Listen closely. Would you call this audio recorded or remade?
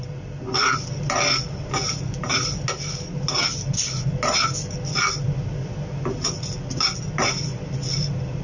recorded